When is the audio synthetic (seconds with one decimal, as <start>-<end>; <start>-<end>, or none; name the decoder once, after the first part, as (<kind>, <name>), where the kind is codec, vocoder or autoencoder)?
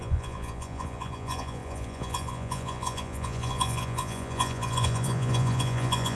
0.0-6.1 (vocoder, Vocos)